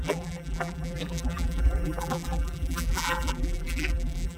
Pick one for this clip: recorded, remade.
remade